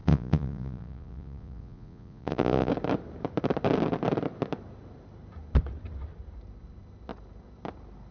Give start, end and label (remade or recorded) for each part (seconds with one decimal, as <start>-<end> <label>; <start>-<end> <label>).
0.0-2.7 remade; 2.7-8.1 recorded